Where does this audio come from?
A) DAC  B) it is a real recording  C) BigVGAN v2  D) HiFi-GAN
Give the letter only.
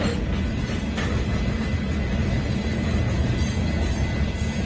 B